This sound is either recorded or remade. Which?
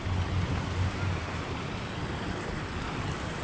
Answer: recorded